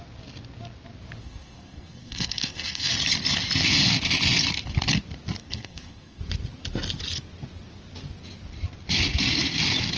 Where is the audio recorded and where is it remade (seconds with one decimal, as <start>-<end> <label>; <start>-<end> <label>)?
0.0-1.2 recorded; 1.2-2.9 remade; 2.9-5.4 recorded; 5.4-6.2 remade; 6.2-10.0 recorded